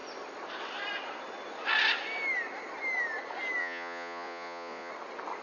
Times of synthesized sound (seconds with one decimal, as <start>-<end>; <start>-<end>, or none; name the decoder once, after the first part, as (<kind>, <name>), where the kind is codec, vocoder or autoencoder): 3.6-4.9 (vocoder, Vocos)